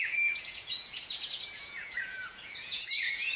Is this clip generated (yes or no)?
yes